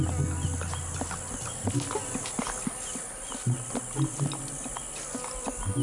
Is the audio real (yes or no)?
yes